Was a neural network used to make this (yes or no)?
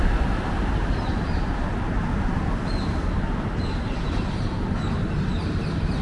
no